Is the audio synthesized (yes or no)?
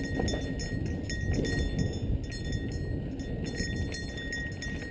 no